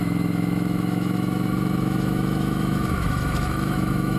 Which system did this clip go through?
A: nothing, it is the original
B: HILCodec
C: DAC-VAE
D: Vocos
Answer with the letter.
C